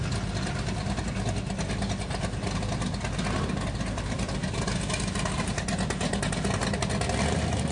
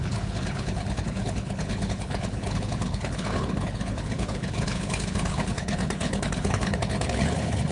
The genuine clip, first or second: first